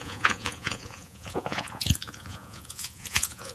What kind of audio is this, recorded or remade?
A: remade